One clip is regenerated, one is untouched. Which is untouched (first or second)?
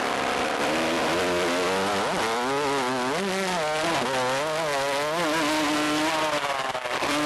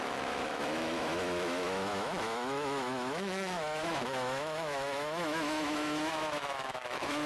first